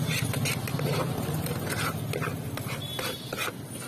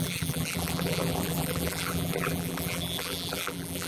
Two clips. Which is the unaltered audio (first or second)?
first